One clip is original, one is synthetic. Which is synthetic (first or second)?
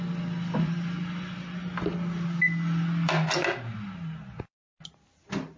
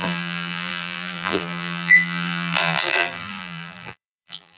second